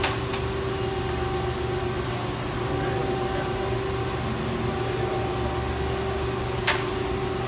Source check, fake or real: real